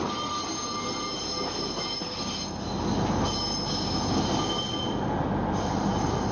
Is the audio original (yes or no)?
yes